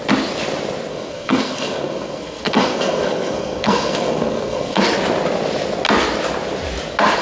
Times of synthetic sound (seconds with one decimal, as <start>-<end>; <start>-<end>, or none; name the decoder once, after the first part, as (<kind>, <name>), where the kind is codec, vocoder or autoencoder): 0.9-4.8 (codec, SNAC)